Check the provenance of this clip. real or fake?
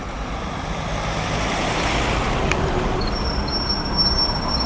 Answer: real